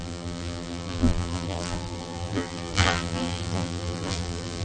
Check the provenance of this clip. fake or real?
fake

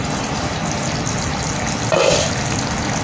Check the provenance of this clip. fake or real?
real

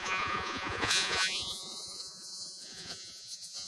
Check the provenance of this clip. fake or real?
fake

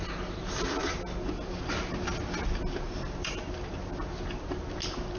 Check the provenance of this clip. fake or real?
real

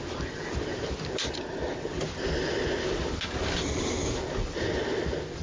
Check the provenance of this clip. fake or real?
real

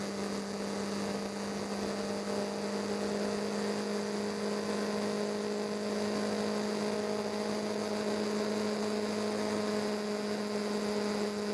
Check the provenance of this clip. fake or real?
real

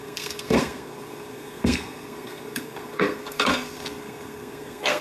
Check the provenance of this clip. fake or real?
fake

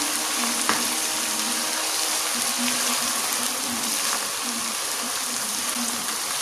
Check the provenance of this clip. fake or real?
real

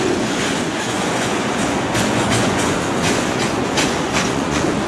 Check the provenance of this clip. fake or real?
fake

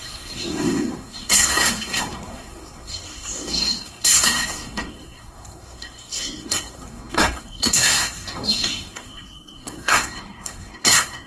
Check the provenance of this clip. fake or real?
fake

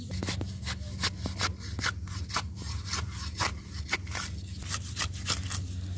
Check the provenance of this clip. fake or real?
real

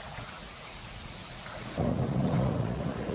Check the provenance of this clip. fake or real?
fake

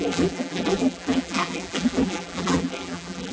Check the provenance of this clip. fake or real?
fake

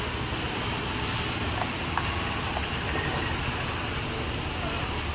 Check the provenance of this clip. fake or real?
real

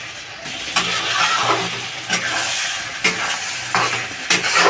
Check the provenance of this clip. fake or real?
real